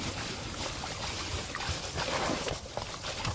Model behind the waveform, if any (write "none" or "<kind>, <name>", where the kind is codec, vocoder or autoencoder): none